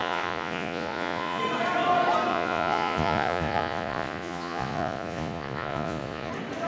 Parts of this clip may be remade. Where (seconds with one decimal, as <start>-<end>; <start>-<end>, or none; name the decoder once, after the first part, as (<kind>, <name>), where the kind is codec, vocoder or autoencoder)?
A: 0.0-1.4 (vocoder, Vocos); 2.3-6.3